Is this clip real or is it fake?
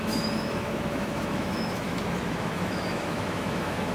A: fake